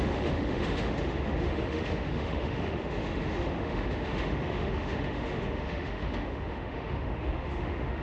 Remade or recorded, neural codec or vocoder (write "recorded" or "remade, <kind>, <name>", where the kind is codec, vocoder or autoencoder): remade, autoencoder, DAC-VAE